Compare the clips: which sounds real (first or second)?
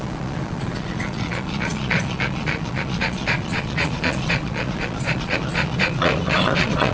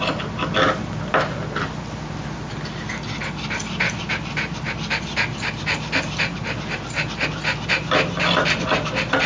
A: second